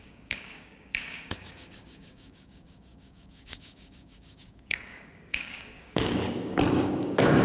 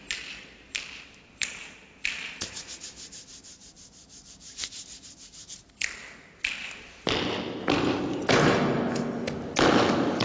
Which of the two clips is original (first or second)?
second